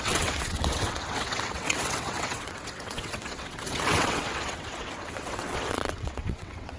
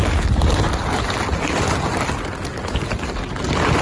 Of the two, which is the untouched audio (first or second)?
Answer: second